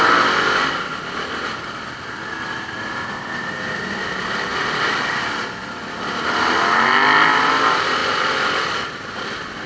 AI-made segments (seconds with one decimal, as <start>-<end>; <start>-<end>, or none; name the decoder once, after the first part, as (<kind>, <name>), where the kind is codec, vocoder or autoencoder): 4.5-5.3 (vocoder, BigVGAN v2); 8.0-8.6